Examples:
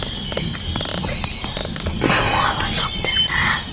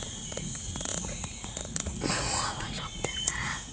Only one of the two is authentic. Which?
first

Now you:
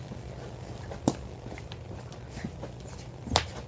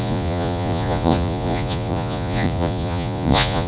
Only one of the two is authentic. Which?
first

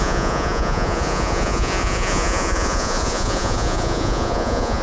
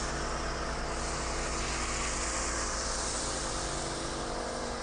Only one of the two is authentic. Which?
second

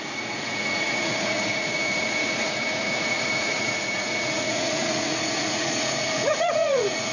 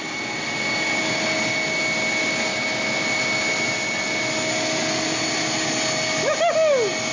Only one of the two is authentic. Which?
second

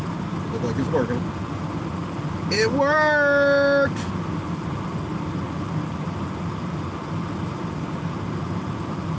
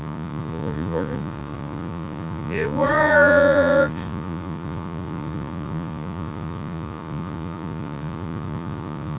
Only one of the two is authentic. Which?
first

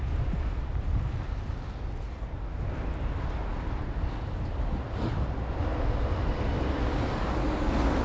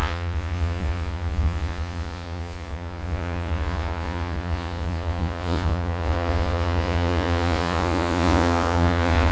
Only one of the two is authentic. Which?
first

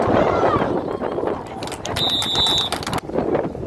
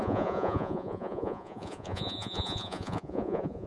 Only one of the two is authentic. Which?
first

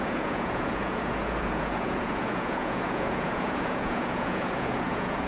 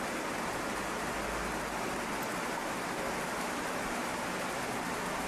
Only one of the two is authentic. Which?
second